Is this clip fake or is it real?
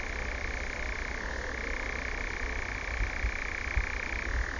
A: real